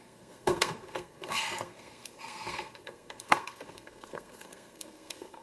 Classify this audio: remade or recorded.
remade